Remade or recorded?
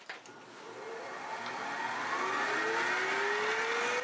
recorded